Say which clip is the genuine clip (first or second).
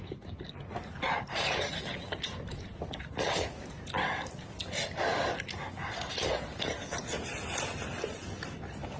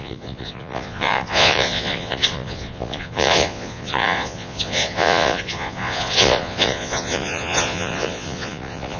first